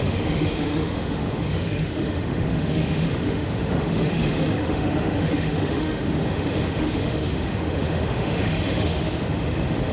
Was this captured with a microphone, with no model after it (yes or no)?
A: no